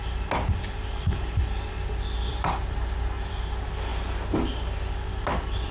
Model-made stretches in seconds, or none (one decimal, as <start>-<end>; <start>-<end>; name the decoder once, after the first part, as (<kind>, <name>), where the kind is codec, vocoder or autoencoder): 2.3-3.3 (vocoder, BigVGAN v2)